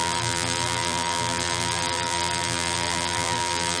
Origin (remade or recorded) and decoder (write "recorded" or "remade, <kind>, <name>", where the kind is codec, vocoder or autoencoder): remade, vocoder, BigVGAN v2